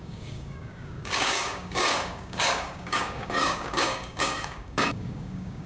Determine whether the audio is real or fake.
fake